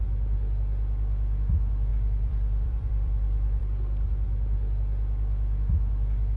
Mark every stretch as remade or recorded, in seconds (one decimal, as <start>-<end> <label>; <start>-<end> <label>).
0.0-1.9 recorded; 1.9-3.6 remade; 3.6-6.4 recorded